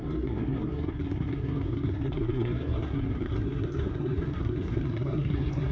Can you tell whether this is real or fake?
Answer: fake